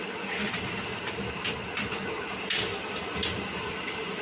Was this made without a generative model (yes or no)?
yes